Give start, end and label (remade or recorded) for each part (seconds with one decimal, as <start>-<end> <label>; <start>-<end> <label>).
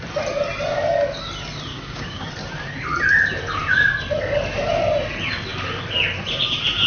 0.0-1.7 recorded; 1.7-2.3 remade; 2.3-6.9 recorded